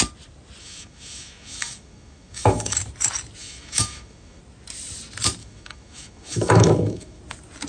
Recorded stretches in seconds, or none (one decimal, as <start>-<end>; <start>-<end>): 0.0-0.6; 2.8-3.4; 4.4-5.4; 7.2-7.7